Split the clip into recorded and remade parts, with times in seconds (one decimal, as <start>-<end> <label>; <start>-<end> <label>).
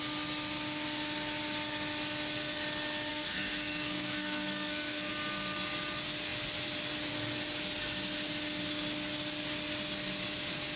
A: 0.0-3.1 recorded; 3.1-5.1 remade; 5.1-10.8 recorded